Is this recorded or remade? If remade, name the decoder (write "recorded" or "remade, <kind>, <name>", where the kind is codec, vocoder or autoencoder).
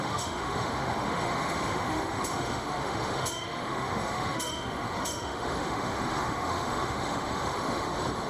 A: remade, autoencoder, DAC-VAE